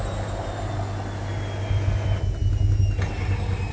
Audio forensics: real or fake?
real